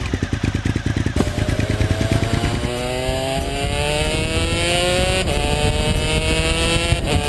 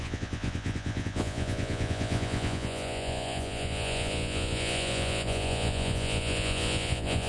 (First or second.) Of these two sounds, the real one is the first